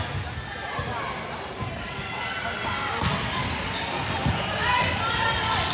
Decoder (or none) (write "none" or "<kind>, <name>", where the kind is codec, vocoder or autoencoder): none